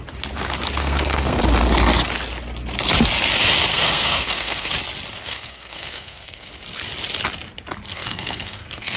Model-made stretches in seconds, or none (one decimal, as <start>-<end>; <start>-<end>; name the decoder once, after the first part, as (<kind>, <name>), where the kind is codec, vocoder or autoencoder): 0.8-1.4 (codec, SNAC); 3.7-4.7; 5.2-6.5; 7.9-9.0